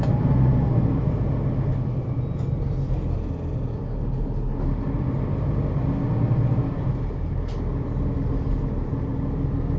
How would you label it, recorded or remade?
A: recorded